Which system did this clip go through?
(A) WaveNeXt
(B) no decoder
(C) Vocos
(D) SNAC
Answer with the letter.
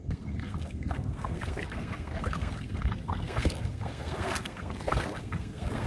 D